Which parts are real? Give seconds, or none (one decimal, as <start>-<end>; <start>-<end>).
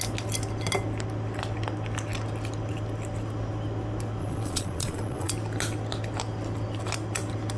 0.0-4.2; 5.3-7.6